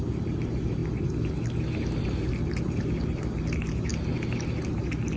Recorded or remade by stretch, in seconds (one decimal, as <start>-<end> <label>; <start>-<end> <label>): 0.0-5.2 recorded